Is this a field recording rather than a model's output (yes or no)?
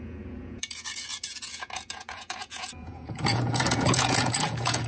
no